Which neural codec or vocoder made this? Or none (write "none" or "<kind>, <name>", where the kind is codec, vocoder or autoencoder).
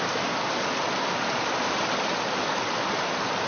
none